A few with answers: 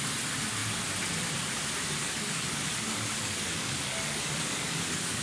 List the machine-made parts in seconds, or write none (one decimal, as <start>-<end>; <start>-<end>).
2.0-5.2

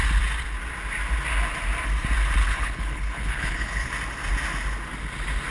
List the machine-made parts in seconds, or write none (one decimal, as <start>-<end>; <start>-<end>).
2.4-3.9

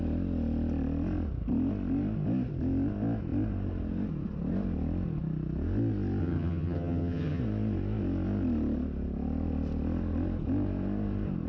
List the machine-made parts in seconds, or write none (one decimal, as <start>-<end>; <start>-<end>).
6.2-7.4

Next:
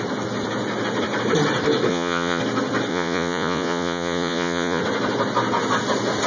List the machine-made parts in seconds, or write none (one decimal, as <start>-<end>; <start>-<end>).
1.9-2.4; 2.9-4.8

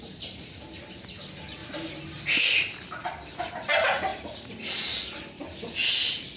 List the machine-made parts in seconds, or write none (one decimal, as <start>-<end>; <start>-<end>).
none

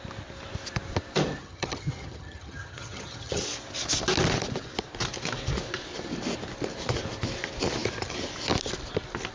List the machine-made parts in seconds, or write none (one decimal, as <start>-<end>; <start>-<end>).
1.4-3.4

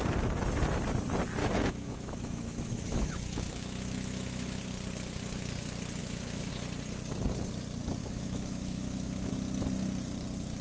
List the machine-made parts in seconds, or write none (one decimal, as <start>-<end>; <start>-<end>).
1.4-4.6; 6.0-6.5; 8.0-9.3